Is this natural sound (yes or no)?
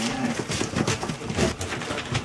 yes